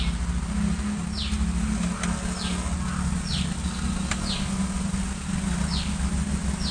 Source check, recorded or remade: recorded